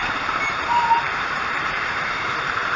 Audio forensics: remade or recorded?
remade